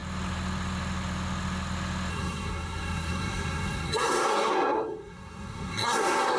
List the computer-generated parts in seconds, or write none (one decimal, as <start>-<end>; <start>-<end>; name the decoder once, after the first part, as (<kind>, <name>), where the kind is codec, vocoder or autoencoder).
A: 2.1-6.4 (codec, SNAC)